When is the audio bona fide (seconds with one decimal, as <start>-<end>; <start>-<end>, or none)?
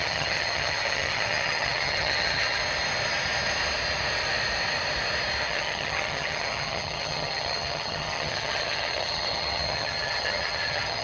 2.6-5.4